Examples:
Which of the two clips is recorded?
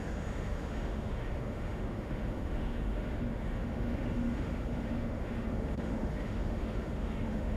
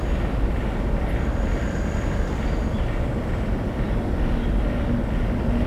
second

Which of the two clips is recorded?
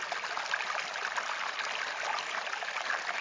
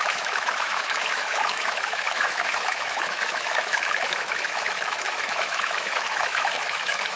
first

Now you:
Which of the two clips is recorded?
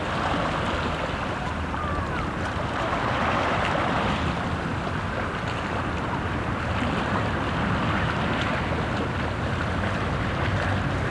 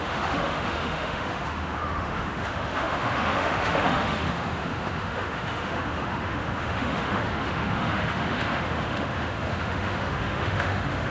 first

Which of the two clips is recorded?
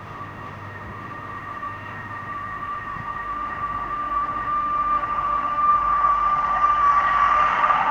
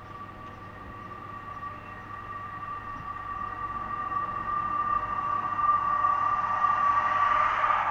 second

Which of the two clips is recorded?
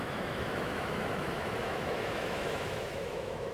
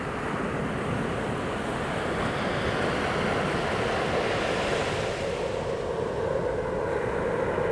second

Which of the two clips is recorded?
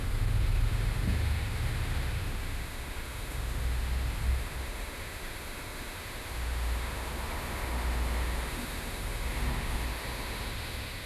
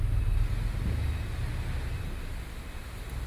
second